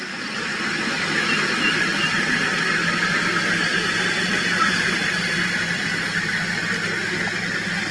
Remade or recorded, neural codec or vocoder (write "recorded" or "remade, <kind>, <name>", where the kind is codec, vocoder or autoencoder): recorded